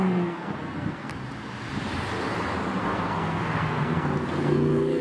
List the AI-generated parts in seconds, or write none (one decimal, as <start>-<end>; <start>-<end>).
0.0-1.1; 2.8-5.0